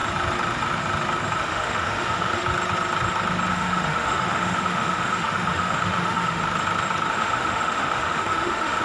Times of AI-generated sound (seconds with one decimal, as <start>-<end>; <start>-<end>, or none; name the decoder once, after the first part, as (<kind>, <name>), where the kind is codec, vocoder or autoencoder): 1.4-2.4 (autoencoder, DAC-VAE); 3.5-6.4; 7.1-8.8